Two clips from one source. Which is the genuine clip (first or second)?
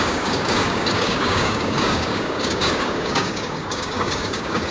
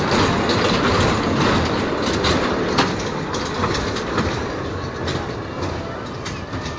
second